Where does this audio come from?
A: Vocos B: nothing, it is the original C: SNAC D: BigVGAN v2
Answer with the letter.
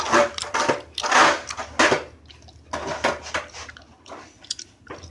B